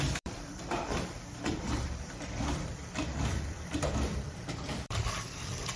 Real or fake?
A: fake